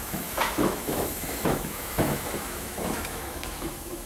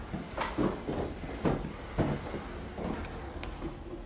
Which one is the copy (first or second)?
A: first